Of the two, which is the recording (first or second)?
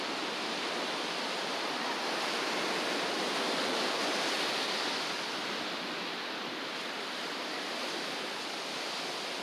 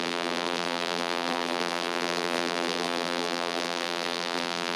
first